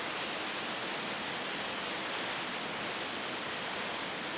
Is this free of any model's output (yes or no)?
yes